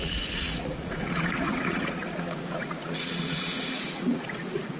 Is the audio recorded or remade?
remade